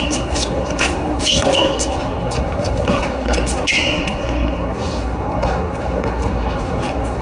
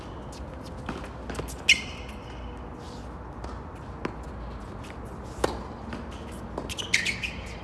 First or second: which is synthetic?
first